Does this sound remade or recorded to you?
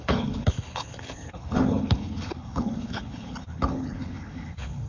remade